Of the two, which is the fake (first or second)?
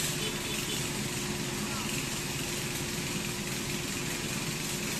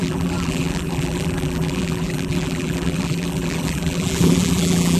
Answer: second